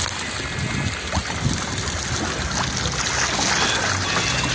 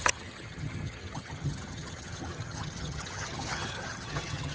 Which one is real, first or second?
first